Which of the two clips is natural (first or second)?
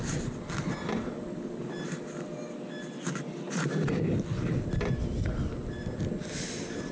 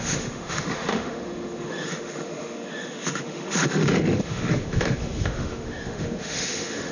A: first